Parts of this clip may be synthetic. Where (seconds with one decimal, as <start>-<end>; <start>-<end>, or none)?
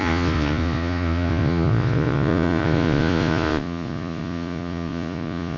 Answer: 0.0-5.6